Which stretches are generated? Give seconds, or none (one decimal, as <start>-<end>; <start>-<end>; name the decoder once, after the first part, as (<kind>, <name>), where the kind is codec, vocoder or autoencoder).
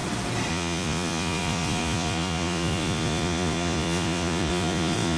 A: 0.5-5.2 (vocoder, Vocos)